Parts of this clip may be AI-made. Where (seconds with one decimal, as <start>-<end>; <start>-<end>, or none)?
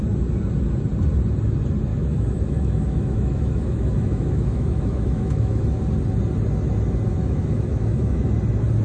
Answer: 1.9-5.6; 7.2-8.3